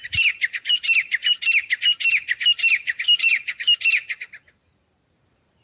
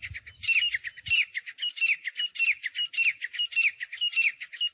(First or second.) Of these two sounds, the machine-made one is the first